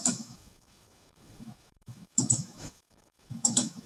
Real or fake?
fake